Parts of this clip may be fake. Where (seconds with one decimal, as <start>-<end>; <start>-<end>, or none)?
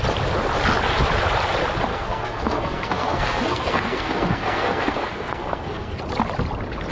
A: 1.9-6.0